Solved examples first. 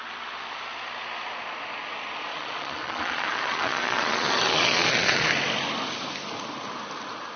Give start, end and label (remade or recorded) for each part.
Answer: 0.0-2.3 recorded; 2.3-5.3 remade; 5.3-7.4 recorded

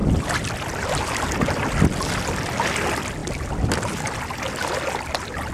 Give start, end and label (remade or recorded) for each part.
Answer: 0.0-5.5 recorded

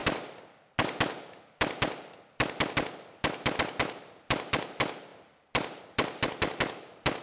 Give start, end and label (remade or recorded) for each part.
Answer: 0.0-7.2 recorded

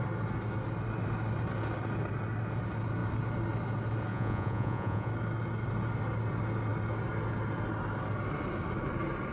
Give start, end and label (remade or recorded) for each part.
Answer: 0.0-4.1 recorded; 4.1-5.1 remade; 5.1-9.3 recorded

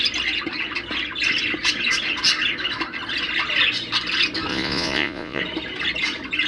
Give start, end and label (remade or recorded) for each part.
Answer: 0.0-4.5 recorded; 4.5-5.4 remade; 5.4-6.5 recorded

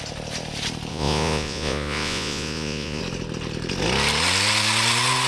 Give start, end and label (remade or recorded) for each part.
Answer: 0.0-0.9 recorded; 0.9-3.0 remade; 3.0-5.3 recorded